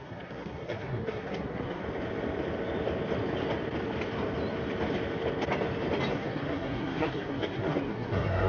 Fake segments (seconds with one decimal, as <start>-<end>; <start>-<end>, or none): 0.0-1.8; 6.1-8.5